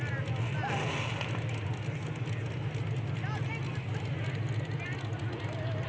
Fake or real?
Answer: real